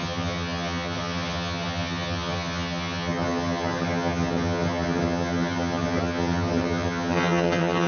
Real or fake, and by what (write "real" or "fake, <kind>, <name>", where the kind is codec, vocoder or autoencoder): fake, vocoder, HiFi-GAN